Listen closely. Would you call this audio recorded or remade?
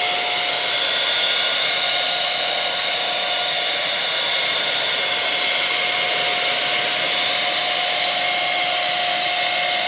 recorded